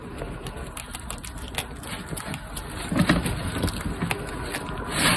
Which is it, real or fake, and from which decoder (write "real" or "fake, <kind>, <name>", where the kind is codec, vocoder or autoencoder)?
real